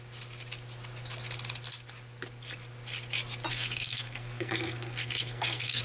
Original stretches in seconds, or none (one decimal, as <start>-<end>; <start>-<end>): 0.0-3.5